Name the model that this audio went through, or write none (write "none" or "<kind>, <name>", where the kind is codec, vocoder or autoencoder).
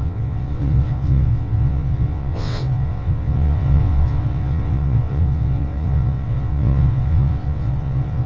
vocoder, WaveNeXt